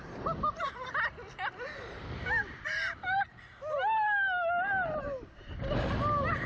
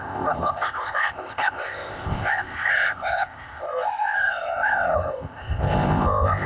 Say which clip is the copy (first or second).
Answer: second